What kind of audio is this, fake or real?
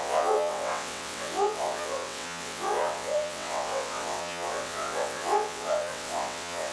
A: fake